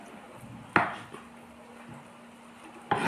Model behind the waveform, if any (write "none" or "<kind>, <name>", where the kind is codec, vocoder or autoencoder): none